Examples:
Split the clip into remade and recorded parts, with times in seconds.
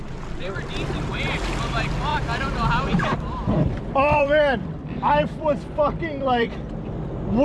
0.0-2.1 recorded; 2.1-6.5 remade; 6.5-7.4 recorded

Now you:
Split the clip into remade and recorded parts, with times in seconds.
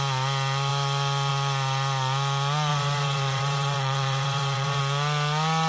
0.0-2.7 recorded; 2.7-4.8 remade; 4.8-5.7 recorded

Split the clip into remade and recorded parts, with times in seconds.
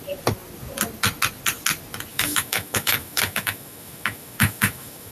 0.0-2.1 recorded; 2.1-5.1 remade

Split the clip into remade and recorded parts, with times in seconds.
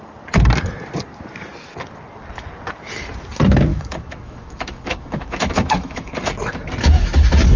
0.0-3.7 recorded; 3.7-6.3 remade; 6.3-7.6 recorded